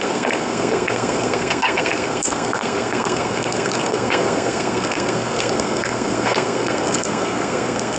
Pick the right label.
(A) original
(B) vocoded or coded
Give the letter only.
B